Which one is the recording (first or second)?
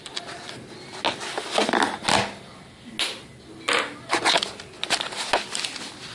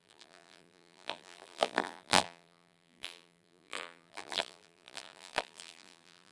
first